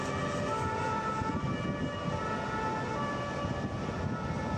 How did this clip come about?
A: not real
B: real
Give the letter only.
B